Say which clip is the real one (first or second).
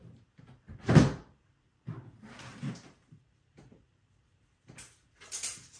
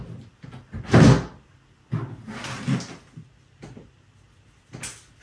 second